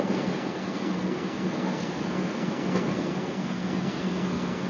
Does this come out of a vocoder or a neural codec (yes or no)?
yes